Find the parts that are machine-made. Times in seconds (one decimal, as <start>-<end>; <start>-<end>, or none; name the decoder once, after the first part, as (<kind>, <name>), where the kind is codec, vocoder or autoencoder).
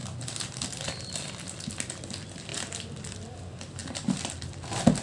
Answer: none